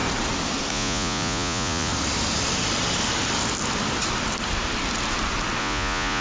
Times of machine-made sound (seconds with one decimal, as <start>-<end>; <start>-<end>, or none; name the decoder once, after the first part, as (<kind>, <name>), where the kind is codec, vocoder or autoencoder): 0.7-1.9 (vocoder, Vocos); 5.6-6.2